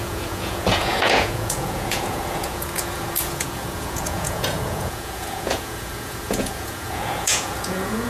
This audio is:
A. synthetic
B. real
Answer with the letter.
A